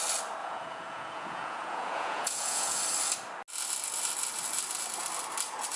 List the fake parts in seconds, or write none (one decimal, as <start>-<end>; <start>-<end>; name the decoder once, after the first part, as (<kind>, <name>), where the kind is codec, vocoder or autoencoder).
0.4-2.8 (vocoder, Vocos)